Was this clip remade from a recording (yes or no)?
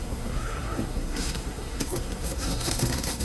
yes